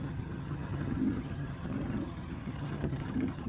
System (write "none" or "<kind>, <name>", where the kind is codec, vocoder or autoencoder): vocoder, HiFi-GAN